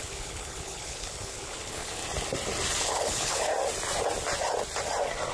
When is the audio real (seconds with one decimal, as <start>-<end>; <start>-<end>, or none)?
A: 2.0-2.8; 3.5-5.3